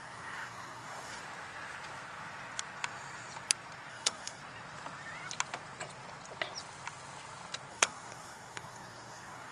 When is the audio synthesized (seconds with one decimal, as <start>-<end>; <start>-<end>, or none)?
0.0-1.2; 3.9-4.4; 7.7-9.5